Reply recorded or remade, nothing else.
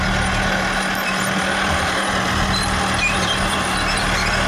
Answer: recorded